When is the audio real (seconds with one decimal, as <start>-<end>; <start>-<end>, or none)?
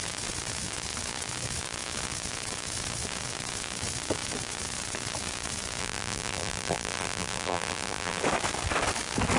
0.0-5.8; 8.2-9.4